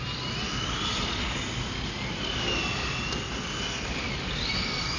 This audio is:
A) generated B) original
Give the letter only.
B